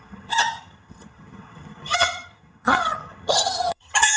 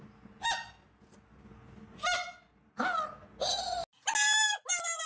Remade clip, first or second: first